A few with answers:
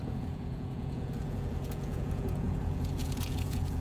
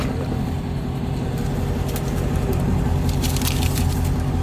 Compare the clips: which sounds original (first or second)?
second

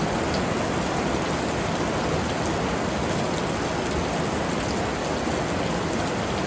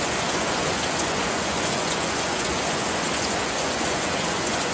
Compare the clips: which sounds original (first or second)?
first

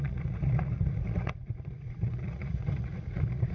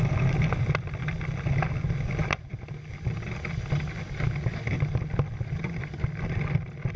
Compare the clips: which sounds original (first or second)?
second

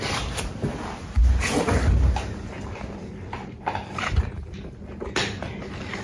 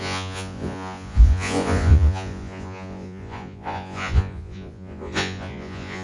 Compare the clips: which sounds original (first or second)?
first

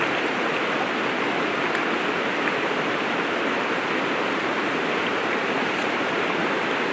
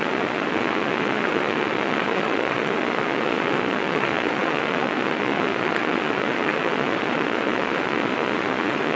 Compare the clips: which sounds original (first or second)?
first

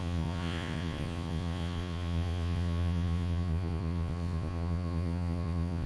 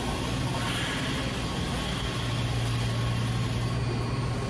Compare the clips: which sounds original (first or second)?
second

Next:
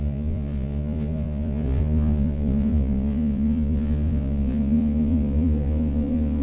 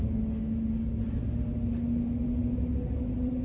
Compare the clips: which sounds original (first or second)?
second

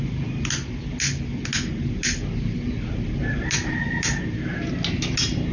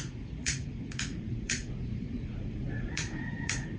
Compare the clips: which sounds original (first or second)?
first